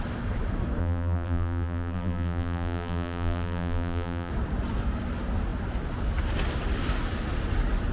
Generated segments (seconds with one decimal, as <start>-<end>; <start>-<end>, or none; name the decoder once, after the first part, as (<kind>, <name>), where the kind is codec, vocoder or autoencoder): 0.8-4.3 (vocoder, BigVGAN v2)